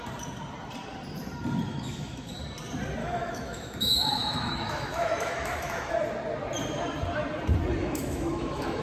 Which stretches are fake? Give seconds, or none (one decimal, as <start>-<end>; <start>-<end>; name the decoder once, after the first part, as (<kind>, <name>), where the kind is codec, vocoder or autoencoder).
1.7-2.3 (autoencoder, DAC-VAE); 3.0-5.9; 7.8-8.8